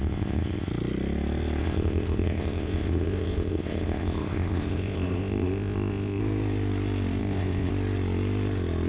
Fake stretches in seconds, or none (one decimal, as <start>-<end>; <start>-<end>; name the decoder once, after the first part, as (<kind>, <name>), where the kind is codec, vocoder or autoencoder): 0.0-0.7 (codec, ZipCodec); 1.6-6.2; 7.2-7.7